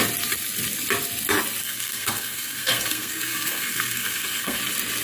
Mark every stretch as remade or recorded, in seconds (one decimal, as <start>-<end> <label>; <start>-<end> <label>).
0.0-1.6 recorded; 1.6-4.6 remade; 4.6-5.0 recorded